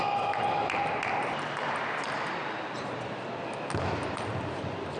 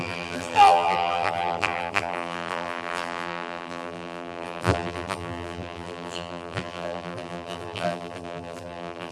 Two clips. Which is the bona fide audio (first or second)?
first